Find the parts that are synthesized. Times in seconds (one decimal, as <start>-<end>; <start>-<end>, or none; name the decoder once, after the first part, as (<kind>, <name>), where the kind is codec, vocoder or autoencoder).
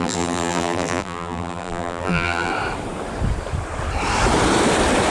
0.0-2.5 (vocoder, BigVGAN v2)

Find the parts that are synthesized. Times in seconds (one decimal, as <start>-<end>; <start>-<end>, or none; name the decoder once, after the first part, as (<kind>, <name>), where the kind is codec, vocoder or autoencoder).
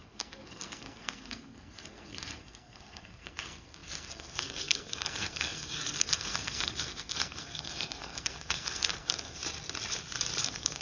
0.0-9.4 (codec, SNAC); 10.4-10.8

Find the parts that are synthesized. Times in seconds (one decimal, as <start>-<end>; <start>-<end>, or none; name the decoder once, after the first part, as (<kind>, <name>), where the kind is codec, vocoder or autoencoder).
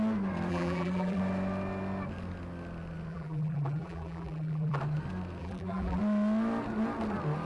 0.5-1.2 (vocoder, BigVGAN v2); 3.1-4.8; 5.4-6.0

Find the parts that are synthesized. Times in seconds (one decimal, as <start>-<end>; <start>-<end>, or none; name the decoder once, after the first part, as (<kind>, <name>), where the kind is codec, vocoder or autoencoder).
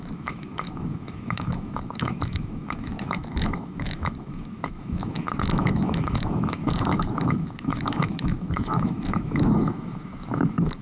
0.0-10.8 (autoencoder, DAC-VAE)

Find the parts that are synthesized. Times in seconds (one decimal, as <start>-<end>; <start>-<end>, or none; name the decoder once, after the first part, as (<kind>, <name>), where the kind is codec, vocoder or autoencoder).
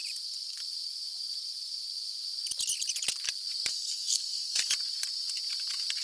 3.7-4.7 (codec, SNAC)